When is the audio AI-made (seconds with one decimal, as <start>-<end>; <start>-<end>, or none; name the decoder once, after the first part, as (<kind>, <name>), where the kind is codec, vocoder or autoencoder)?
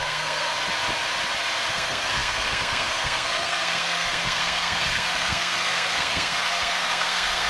0.0-0.5 (codec, SNAC); 1.7-7.5